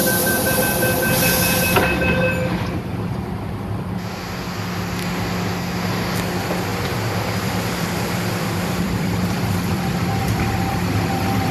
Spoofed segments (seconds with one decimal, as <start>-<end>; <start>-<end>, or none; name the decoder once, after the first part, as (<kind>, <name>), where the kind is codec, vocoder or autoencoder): 0.0-0.6 (vocoder, BigVGAN v2); 2.9-4.2; 6.7-11.5